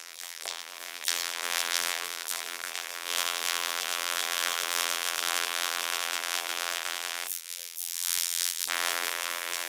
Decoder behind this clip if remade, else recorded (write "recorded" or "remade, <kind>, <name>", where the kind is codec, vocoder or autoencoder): remade, vocoder, BigVGAN v2